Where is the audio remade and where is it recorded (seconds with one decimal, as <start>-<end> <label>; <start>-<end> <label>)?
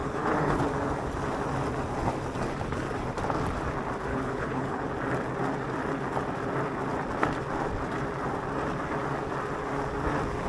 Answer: 0.0-0.6 remade; 0.6-4.1 recorded; 4.1-4.8 remade; 4.8-10.5 recorded